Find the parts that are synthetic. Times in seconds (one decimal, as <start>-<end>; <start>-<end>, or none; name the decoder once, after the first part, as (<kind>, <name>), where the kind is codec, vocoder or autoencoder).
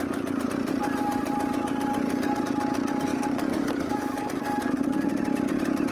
3.1-4.2 (codec, DAC)